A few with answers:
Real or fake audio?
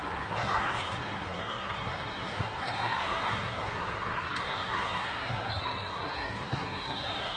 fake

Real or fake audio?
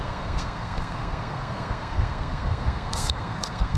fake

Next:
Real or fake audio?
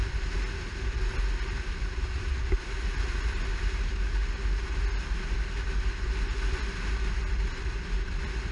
real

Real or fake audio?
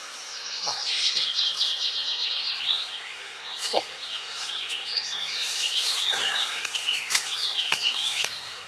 fake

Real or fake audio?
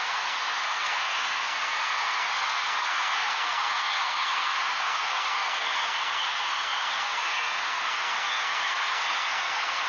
fake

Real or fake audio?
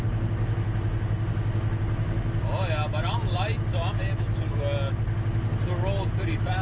real